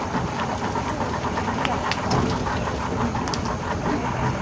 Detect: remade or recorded recorded